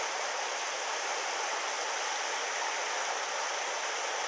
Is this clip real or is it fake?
real